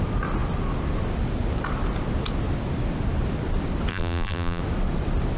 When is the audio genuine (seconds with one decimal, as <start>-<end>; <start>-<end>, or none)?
0.0-3.9; 4.6-5.4